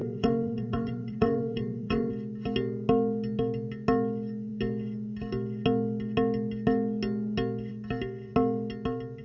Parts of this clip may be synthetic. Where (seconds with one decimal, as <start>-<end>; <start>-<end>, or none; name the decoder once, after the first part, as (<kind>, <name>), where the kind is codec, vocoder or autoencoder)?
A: 0.0-2.1 (vocoder, Vocos)